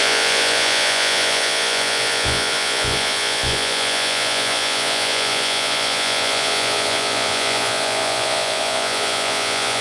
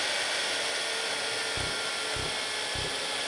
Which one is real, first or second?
second